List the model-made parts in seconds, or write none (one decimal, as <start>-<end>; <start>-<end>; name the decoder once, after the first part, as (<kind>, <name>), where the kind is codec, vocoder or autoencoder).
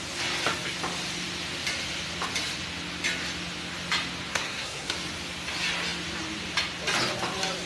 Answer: 4.3-4.9 (codec, SNAC)